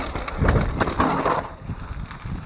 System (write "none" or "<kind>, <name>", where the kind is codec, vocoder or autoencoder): none